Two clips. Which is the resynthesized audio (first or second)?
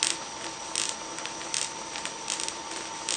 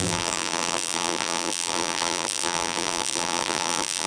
second